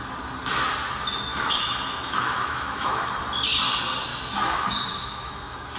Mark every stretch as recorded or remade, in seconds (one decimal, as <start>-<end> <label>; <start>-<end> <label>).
0.0-1.3 recorded; 1.3-3.2 remade; 3.2-4.1 recorded; 4.1-5.8 remade